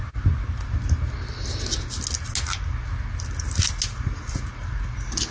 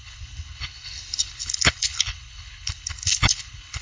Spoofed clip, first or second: second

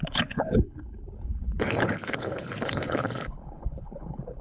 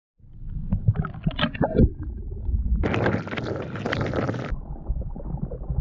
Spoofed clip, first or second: first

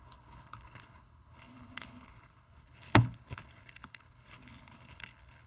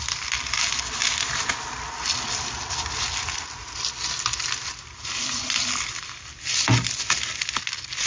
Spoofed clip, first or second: first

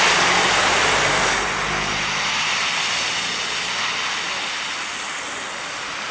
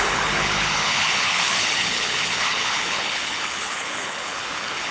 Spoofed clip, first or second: second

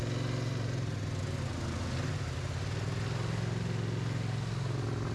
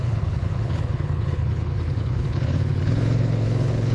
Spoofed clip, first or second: second